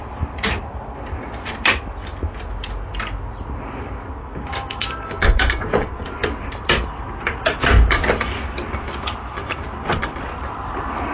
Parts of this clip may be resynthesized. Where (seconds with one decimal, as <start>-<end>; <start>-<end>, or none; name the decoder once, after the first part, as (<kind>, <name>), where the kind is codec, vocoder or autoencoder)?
4.2-5.1 (codec, DAC)